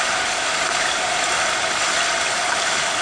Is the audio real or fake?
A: real